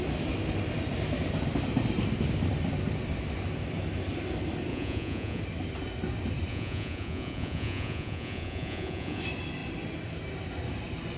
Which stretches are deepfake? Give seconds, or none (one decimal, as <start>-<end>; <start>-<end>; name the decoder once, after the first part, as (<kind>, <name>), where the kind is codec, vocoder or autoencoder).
4.7-5.4 (vocoder, Vocos); 6.5-9.2